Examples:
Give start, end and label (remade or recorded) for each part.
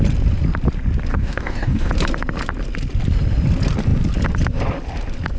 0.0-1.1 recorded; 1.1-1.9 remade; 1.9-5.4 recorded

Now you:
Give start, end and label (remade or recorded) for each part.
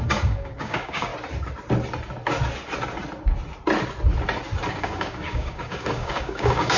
0.0-1.1 remade; 1.1-4.7 recorded; 4.7-6.8 remade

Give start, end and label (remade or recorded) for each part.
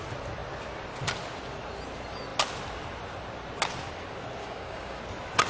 0.0-4.4 recorded; 4.4-5.0 remade; 5.0-5.5 recorded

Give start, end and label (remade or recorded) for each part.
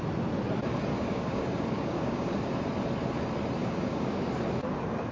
0.0-0.9 recorded; 0.9-2.3 remade; 2.3-3.6 recorded; 3.6-4.3 remade; 4.3-5.1 recorded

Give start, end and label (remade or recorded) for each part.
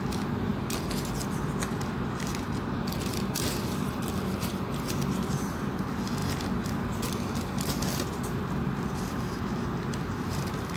0.0-10.8 recorded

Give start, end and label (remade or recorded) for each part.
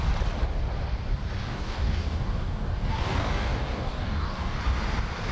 0.0-1.4 recorded; 1.4-4.6 remade; 4.6-5.3 recorded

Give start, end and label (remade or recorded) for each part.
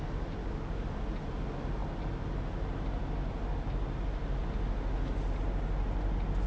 0.0-0.4 recorded; 0.4-1.0 remade; 1.0-6.5 recorded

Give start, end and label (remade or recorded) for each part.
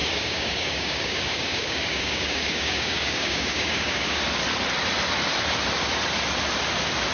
0.0-4.2 remade; 4.2-7.1 recorded